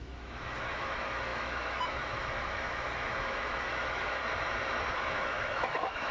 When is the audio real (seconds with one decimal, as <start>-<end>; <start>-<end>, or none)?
4.2-4.9